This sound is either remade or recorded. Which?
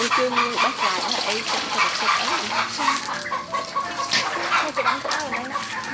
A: recorded